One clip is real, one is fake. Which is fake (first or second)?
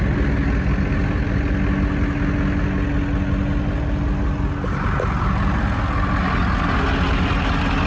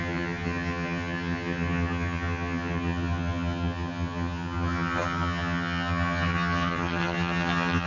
second